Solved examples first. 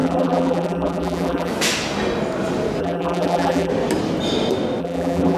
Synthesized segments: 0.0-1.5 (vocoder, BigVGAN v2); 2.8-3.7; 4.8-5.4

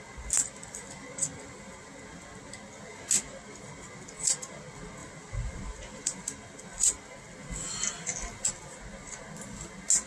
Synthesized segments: 5.0-6.0 (vocoder, BigVGAN v2)

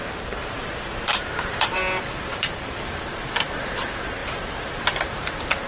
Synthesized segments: 0.0-1.8 (vocoder, BigVGAN v2); 2.3-2.8

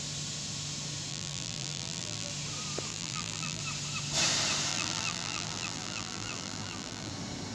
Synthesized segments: 1.1-2.3 (vocoder, BigVGAN v2); 2.9-3.6; 4.7-7.1

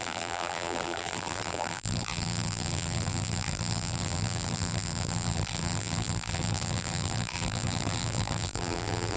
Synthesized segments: 0.0-9.2 (vocoder, BigVGAN v2)